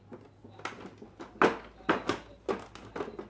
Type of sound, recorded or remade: recorded